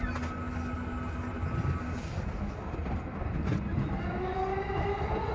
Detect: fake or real real